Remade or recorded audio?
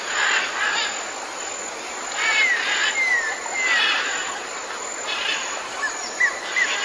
recorded